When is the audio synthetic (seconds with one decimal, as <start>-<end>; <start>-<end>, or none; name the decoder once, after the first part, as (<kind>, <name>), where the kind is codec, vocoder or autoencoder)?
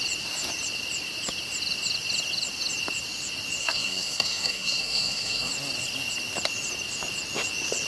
3.6-5.5 (codec, SNAC)